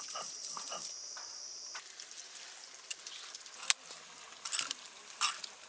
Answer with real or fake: real